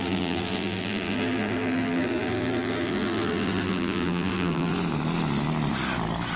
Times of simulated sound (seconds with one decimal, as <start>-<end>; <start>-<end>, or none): 0.0-4.7